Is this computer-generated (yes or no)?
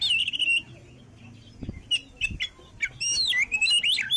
no